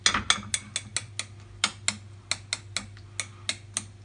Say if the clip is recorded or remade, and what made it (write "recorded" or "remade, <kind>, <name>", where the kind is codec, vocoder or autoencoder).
recorded